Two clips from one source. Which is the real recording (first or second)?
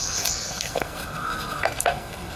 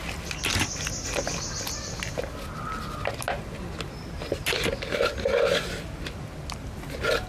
second